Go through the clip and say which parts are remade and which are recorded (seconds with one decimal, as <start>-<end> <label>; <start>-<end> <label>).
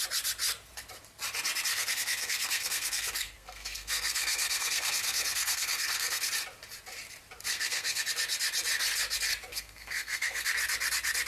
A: 0.0-1.7 recorded; 1.7-6.3 remade; 6.3-7.5 recorded; 7.5-8.0 remade; 8.0-9.5 recorded; 9.5-10.5 remade; 10.5-11.3 recorded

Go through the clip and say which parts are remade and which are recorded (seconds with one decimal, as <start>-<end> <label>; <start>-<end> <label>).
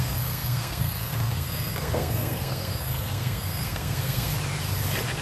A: 0.0-4.3 remade; 4.3-5.2 recorded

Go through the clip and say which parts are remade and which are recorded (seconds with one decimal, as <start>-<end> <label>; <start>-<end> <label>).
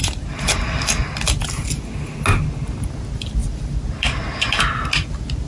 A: 0.0-5.5 recorded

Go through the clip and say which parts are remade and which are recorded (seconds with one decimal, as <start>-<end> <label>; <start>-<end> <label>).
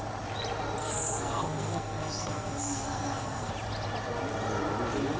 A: 0.0-0.8 recorded; 0.8-3.5 remade; 3.5-5.2 recorded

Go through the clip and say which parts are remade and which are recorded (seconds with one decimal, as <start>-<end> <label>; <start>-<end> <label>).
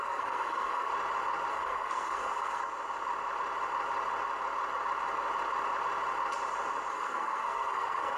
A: 0.0-0.9 remade; 0.9-1.5 recorded; 1.5-2.6 remade; 2.6-6.9 recorded; 6.9-8.2 remade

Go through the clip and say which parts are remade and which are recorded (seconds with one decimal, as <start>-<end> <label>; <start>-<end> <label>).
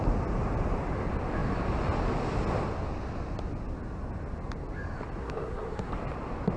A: 0.0-5.2 recorded; 5.2-5.9 remade; 5.9-6.6 recorded